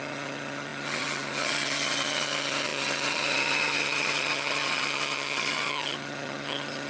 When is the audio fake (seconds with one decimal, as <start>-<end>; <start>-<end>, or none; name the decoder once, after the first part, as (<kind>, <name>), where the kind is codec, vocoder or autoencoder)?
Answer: 0.0-6.9 (vocoder, HiFi-GAN)